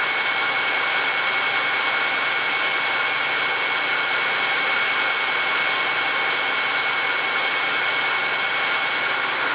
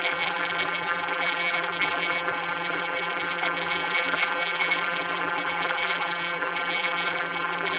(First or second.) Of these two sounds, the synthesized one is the second